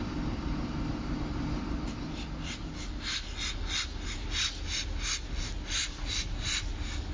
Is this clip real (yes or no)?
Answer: yes